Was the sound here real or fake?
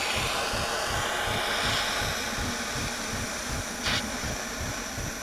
fake